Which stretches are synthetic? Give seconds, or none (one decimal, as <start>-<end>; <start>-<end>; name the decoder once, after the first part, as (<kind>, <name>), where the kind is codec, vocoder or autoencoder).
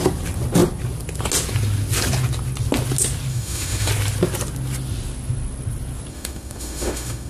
3.3-3.9 (autoencoder, DAC-VAE); 6.1-7.3